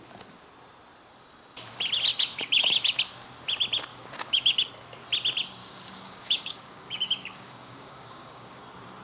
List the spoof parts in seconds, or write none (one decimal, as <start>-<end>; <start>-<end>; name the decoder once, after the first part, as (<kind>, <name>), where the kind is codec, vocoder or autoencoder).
2.1-3.0 (codec, DAC); 3.9-4.7; 5.6-8.6